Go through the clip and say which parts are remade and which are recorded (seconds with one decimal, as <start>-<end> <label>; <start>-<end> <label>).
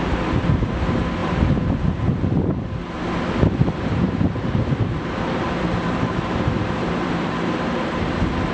0.0-1.2 recorded; 1.2-1.7 remade; 1.7-3.6 recorded; 3.6-7.9 remade; 7.9-8.5 recorded